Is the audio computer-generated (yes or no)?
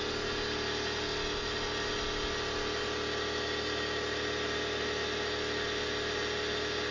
no